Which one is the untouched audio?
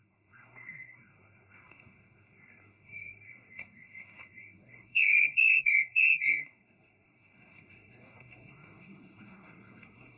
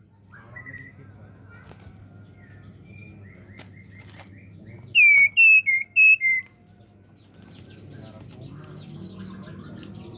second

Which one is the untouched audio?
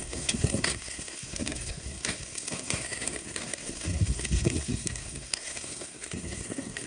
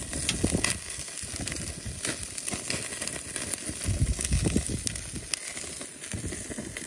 second